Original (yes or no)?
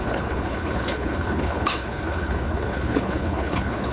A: no